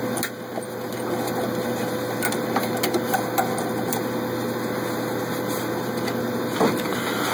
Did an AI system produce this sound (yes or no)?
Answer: no